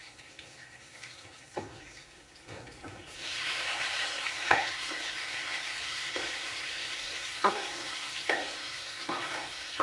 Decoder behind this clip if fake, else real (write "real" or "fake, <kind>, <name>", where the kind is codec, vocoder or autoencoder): fake, codec, SNAC